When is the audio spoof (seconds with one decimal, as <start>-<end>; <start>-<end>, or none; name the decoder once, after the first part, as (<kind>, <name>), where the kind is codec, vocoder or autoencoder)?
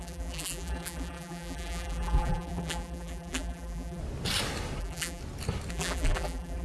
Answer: 0.0-4.0 (vocoder, BigVGAN v2); 4.8-5.2; 5.7-6.6